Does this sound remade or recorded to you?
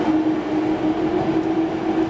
recorded